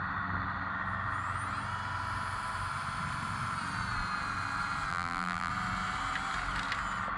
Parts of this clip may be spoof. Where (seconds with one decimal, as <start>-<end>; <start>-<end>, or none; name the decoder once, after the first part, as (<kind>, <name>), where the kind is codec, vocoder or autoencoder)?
4.9-5.5 (vocoder, BigVGAN v2)